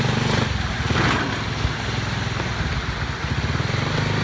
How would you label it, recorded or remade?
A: recorded